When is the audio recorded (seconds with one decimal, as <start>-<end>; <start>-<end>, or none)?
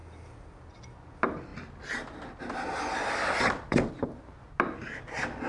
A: 0.0-5.5